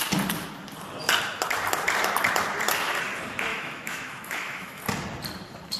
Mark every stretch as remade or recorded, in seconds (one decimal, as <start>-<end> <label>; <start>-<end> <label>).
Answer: 0.0-3.5 recorded; 3.5-4.8 remade; 4.8-5.8 recorded